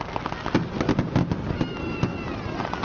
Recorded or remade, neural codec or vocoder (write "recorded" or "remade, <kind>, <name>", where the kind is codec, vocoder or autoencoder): recorded